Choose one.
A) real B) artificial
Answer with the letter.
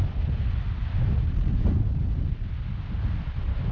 A